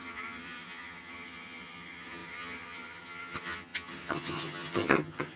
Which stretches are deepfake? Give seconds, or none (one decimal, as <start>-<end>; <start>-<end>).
0.0-5.4